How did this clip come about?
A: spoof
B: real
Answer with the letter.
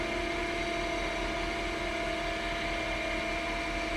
B